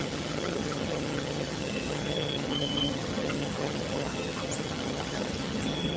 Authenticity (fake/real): fake